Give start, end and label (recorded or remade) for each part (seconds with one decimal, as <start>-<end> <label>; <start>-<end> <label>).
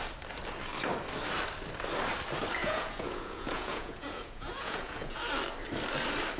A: 0.0-2.6 recorded; 2.6-5.2 remade; 5.2-6.4 recorded